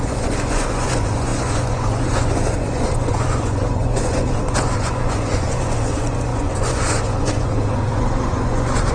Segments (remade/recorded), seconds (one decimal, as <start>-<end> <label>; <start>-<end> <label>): 0.0-8.9 remade